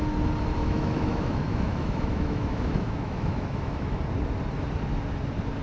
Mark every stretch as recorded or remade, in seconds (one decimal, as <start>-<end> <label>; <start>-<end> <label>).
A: 0.0-0.6 recorded; 0.6-4.0 remade; 4.0-5.6 recorded